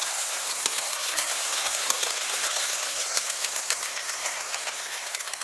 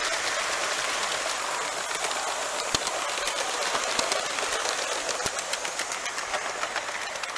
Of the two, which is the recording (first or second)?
second